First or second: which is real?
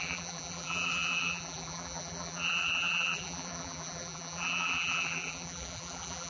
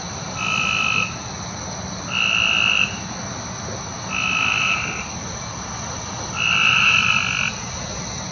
second